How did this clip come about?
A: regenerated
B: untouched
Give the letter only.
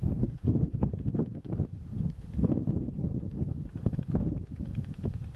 A